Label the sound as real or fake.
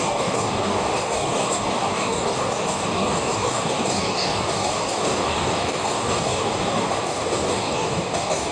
fake